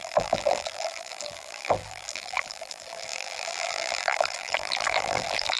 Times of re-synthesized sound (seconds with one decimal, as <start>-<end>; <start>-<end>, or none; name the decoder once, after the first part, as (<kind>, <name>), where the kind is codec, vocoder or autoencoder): 0.0-5.6 (vocoder, BigVGAN v2)